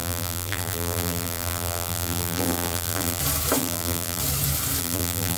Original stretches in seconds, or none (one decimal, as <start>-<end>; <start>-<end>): 3.2-3.6; 4.2-4.8